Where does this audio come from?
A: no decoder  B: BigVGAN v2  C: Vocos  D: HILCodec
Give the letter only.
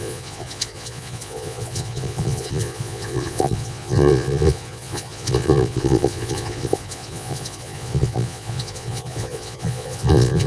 C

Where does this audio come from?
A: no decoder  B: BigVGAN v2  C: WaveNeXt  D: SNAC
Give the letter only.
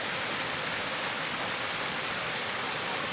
A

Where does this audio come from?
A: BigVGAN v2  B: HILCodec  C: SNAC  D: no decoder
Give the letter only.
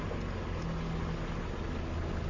D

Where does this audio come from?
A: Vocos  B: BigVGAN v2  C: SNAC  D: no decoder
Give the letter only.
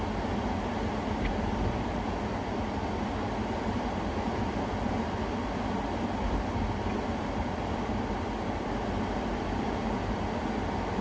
D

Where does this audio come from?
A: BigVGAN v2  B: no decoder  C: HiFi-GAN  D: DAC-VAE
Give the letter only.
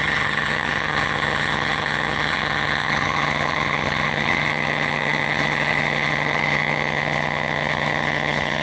C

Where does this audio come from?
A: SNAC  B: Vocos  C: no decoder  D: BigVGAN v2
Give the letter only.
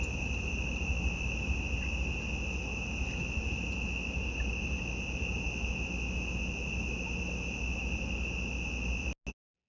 C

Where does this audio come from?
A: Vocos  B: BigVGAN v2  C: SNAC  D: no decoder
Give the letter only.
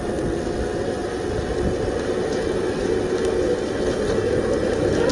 D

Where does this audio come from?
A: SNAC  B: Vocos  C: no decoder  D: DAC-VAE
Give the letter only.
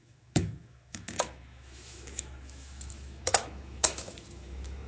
D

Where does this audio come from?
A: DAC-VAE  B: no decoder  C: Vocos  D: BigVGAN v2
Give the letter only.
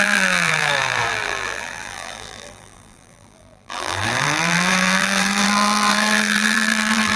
D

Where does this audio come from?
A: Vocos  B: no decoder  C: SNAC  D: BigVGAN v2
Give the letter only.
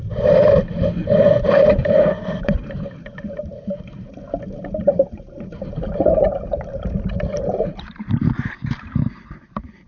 D